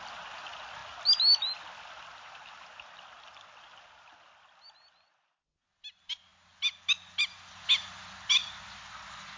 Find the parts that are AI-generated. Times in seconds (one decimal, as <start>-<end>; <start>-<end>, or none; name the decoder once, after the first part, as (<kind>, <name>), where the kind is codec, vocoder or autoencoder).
none